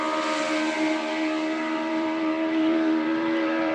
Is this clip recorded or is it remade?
remade